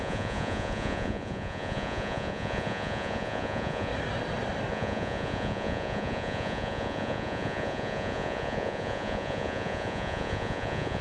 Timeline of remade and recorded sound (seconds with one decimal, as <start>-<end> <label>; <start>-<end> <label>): 0.0-3.9 remade; 3.9-4.7 recorded; 4.7-11.0 remade